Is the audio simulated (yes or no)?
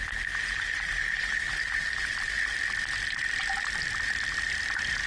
no